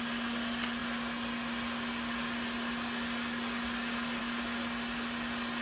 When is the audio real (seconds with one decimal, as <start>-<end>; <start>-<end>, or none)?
0.0-5.6